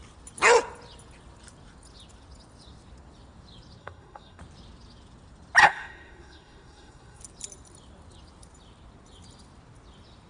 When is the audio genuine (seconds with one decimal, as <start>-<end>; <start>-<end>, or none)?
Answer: 0.0-3.8; 4.4-5.6; 7.2-10.3